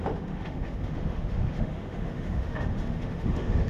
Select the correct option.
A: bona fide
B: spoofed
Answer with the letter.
B